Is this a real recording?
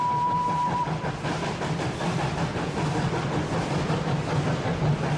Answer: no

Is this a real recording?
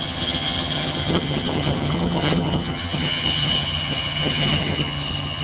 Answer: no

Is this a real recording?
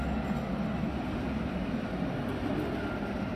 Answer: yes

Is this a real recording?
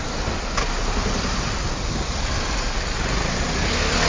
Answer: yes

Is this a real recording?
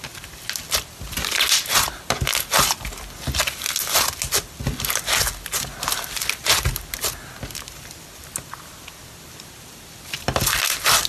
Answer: yes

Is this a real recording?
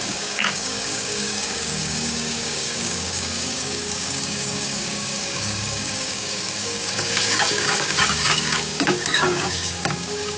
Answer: no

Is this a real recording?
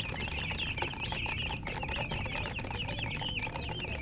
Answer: yes